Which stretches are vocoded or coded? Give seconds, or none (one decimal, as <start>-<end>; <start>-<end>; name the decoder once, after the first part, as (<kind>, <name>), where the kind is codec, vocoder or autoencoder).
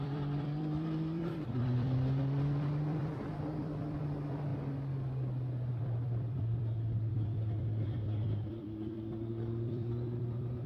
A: 0.0-4.5 (vocoder, BigVGAN v2); 5.7-10.7